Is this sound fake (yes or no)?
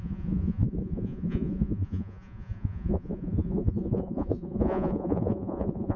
yes